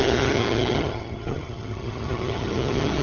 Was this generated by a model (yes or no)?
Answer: yes